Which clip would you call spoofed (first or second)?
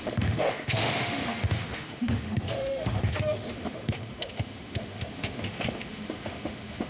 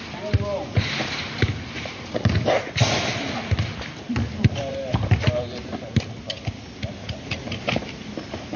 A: first